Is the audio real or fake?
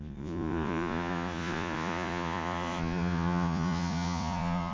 fake